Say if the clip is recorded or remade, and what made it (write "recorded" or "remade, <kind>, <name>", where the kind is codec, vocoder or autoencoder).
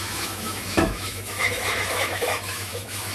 remade, autoencoder, DAC-VAE